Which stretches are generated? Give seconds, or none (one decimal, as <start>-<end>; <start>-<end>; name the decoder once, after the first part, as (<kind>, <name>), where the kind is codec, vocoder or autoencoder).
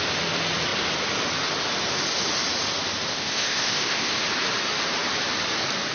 3.1-4.1 (codec, ZipCodec)